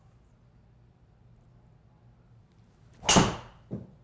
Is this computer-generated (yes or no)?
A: no